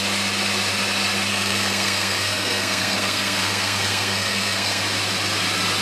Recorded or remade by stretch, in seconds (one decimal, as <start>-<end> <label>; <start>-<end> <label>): 0.0-1.3 recorded; 1.3-4.8 remade; 4.8-5.8 recorded